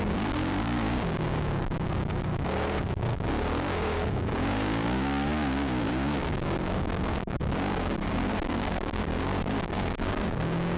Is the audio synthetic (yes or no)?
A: yes